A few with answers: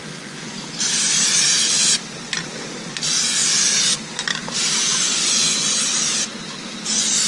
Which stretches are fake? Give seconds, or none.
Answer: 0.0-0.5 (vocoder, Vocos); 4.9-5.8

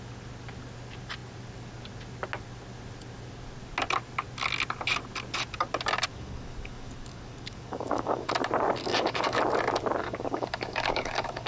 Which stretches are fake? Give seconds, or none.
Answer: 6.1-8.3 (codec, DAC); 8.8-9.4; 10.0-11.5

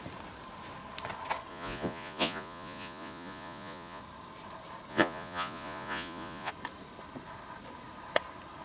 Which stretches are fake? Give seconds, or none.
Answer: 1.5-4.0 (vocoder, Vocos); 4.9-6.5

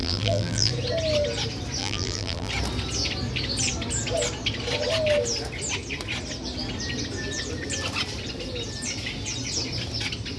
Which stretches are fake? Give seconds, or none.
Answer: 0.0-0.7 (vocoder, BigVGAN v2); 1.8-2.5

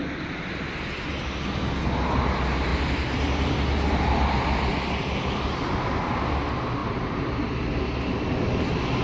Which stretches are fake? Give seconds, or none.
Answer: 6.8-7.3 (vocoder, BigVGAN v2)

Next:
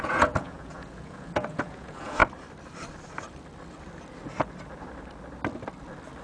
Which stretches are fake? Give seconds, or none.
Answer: 0.0-2.2 (vocoder, Vocos)